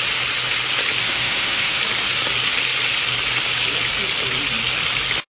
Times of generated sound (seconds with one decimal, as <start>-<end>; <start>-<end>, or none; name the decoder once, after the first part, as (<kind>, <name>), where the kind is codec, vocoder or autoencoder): 1.0-1.8 (autoencoder, DAC-VAE)